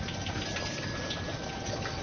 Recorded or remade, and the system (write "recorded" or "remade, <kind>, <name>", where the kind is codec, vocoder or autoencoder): recorded